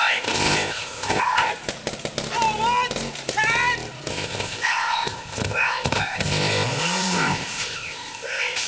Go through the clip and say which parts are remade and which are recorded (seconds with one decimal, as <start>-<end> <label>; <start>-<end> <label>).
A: 0.0-1.5 remade; 1.5-4.1 recorded; 4.1-8.7 remade